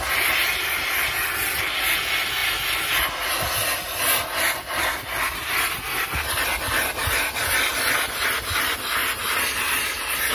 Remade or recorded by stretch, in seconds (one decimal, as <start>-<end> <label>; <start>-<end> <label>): 0.0-9.0 recorded; 9.0-10.3 remade